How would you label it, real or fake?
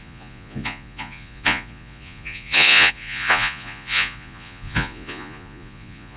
fake